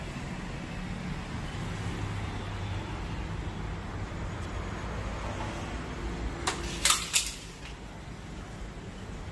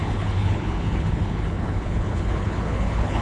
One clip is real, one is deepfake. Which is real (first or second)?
first